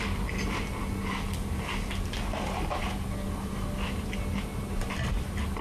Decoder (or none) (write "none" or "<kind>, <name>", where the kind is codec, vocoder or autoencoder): none